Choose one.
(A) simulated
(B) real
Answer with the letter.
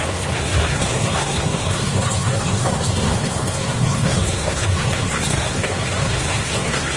A